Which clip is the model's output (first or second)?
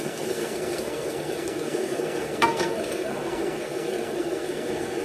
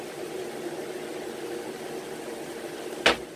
first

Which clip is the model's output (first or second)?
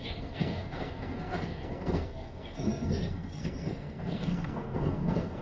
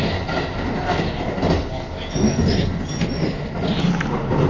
first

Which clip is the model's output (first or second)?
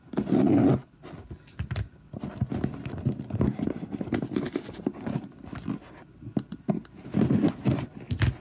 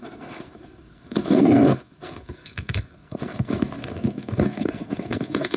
second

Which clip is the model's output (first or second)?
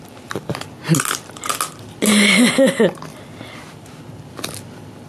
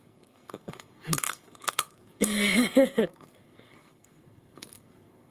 second